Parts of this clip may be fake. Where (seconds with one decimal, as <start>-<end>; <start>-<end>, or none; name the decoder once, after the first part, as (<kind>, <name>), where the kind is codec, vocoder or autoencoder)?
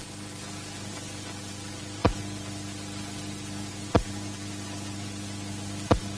none